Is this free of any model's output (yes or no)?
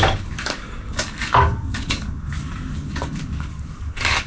no